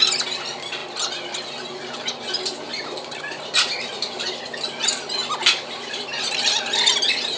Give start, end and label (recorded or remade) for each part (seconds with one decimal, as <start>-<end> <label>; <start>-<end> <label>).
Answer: 0.0-7.4 recorded